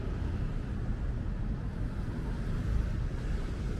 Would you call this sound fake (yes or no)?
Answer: no